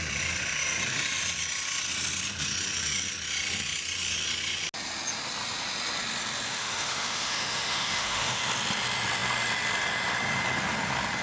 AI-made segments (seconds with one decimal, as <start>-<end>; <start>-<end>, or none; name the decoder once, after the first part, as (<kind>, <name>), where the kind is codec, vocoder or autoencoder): 6.5-8.4 (autoencoder, DAC-VAE)